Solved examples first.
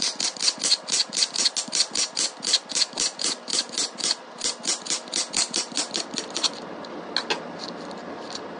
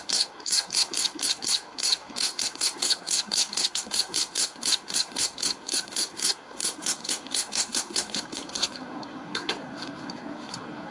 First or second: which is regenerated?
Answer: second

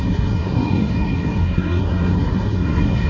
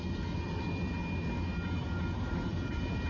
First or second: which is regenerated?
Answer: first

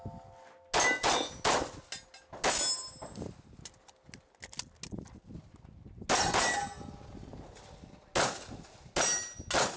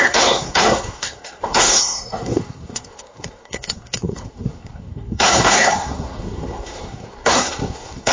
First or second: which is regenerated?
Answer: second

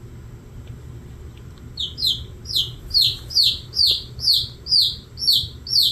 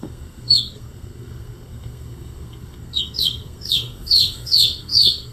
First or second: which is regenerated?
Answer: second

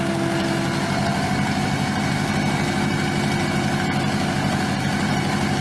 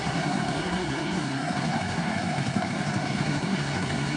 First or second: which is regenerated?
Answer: second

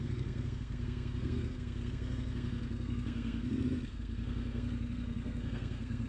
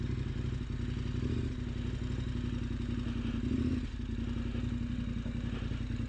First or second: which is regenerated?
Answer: first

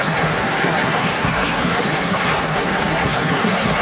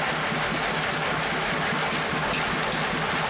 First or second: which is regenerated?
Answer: first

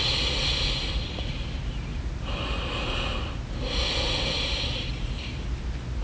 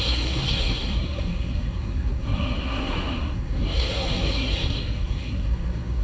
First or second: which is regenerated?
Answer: second